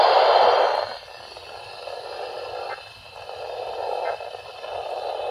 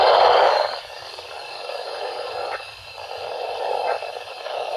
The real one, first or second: first